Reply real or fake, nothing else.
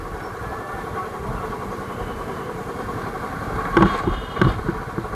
real